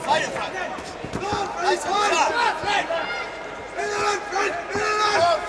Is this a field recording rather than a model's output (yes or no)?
yes